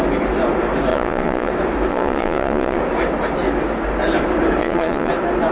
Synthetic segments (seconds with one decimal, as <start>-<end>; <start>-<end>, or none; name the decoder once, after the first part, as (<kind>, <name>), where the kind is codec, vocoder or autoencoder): 0.9-1.5 (vocoder, Vocos); 1.9-2.8; 4.6-5.1